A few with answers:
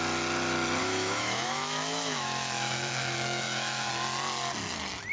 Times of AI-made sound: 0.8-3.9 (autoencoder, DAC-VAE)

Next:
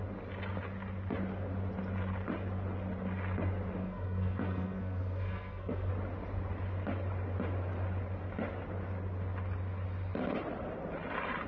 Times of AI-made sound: 3.8-5.9 (codec, SNAC)

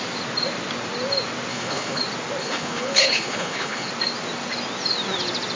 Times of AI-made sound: 1.5-2.0 (codec, HILCodec); 2.4-3.9

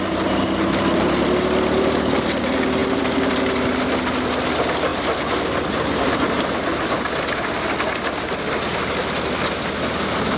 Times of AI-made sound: none

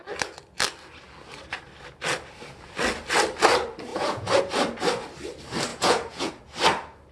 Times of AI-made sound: 3.9-4.4 (vocoder, Vocos); 5.7-6.3

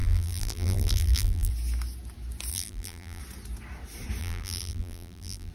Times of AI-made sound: 0.0-1.5 (vocoder, BigVGAN v2); 2.5-3.2; 4.2-5.5